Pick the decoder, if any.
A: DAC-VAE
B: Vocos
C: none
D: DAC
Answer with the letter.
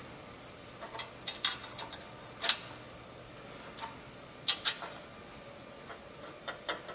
C